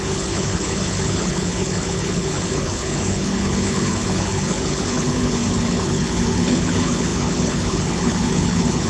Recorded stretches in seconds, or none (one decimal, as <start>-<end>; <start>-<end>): none